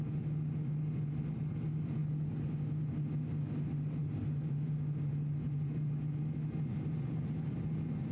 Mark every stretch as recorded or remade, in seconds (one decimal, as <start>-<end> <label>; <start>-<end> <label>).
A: 0.0-8.1 recorded